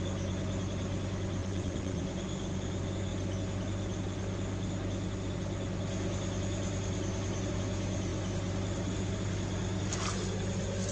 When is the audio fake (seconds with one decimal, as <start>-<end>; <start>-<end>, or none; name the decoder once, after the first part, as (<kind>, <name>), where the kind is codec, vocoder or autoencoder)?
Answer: 1.4-2.0 (vocoder, WaveNeXt)